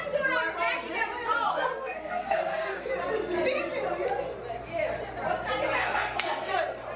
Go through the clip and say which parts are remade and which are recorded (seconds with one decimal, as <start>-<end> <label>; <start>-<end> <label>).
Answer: 0.0-1.5 recorded; 1.5-2.9 remade; 2.9-5.8 recorded; 5.8-6.5 remade; 6.5-7.0 recorded